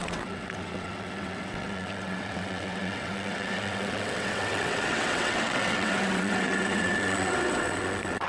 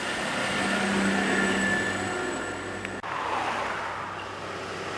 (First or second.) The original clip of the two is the second